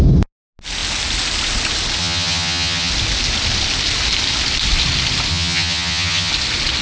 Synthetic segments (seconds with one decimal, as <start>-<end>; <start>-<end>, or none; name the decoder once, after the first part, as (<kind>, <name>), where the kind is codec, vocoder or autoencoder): 2.0-2.9 (vocoder, HiFi-GAN); 5.3-6.3